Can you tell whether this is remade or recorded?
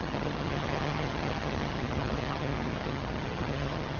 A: remade